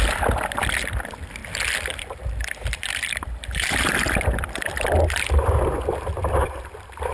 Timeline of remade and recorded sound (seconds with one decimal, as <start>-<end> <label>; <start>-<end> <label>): 0.0-7.1 remade